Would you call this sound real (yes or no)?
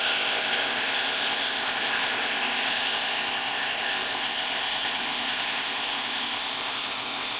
no